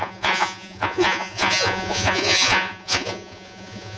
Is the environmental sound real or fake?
fake